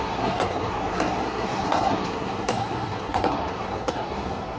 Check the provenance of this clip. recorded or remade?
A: remade